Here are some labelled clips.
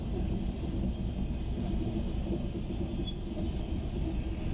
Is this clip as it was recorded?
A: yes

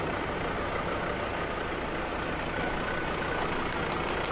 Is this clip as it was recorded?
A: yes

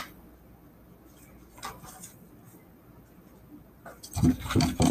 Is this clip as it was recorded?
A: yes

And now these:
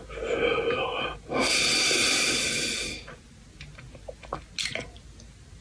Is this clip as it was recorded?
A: yes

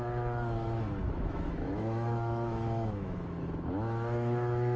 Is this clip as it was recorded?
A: no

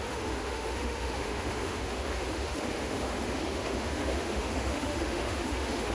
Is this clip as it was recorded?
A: no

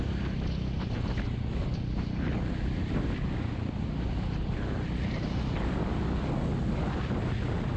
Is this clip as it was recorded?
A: yes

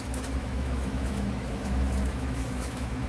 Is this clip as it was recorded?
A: no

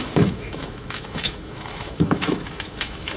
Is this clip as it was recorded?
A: no